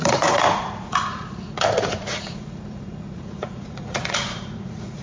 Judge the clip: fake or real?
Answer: fake